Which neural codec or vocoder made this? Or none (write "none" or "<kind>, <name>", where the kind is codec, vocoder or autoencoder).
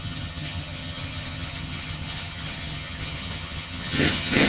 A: vocoder, HiFi-GAN